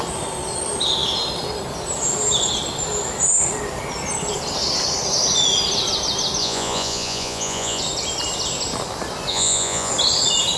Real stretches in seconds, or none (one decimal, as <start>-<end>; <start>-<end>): 0.0-6.4; 7.8-9.3; 9.9-10.6